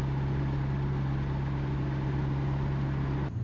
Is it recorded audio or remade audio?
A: recorded